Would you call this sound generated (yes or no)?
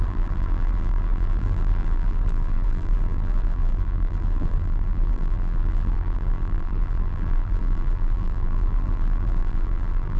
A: yes